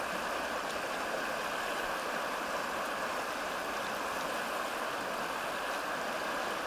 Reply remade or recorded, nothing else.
recorded